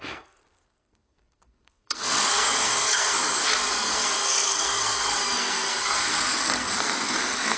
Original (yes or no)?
no